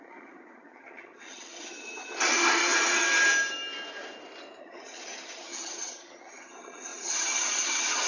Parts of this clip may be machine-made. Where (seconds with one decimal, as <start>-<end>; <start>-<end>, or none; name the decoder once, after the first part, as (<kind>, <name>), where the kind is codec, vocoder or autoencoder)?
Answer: 0.0-2.6 (vocoder, HiFi-GAN); 4.6-8.1

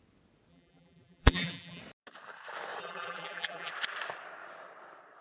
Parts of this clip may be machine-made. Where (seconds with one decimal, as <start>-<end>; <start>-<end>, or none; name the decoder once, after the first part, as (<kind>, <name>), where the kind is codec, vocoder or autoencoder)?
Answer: 0.5-1.8 (vocoder, BigVGAN v2); 2.8-3.7

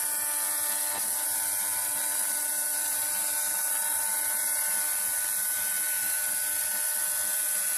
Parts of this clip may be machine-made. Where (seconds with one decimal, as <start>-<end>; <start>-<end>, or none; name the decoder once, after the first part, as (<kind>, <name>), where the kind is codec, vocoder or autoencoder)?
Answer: 0.0-7.8 (vocoder, BigVGAN v2)

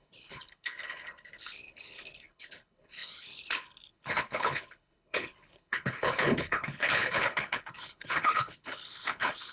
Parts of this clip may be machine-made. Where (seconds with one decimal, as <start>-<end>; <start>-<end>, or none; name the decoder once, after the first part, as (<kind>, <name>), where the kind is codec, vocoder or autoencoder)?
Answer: 0.0-9.5 (codec, HILCodec)

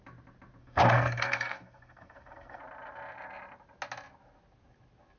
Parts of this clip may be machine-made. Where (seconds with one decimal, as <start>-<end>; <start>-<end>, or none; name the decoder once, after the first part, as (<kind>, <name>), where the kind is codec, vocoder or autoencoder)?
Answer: 0.6-2.6 (codec, SNAC)

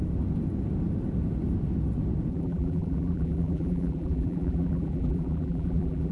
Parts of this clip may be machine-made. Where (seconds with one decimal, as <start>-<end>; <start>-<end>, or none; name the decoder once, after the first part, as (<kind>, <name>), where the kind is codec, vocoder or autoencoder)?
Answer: 2.3-6.1 (vocoder, BigVGAN v2)